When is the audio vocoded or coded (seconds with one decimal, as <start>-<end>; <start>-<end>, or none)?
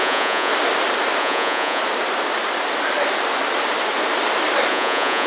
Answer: 0.0-0.5; 1.2-1.8; 4.7-5.3